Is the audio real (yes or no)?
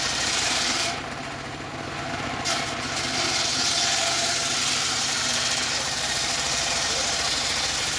no